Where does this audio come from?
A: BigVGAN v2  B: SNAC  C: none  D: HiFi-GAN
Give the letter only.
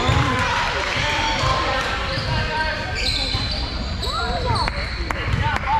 A